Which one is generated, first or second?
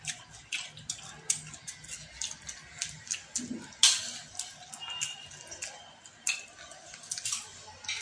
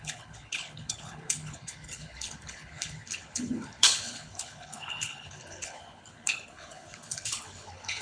second